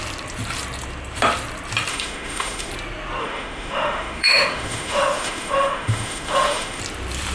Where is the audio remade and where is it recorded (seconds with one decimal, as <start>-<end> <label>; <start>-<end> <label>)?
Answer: 0.0-1.9 recorded; 1.9-2.7 remade; 2.7-3.2 recorded; 3.2-6.8 remade; 6.8-7.3 recorded